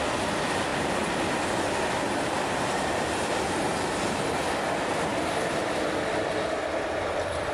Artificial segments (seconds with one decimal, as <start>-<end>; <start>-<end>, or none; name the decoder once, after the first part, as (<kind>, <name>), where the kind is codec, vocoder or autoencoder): none